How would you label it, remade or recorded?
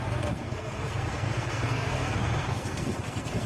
remade